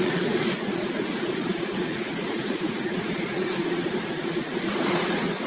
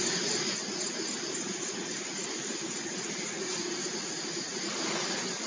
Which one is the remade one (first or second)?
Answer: first